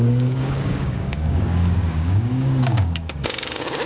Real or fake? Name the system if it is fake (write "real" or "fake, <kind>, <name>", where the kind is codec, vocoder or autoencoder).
fake, codec, DAC